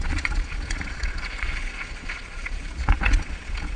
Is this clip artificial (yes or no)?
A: yes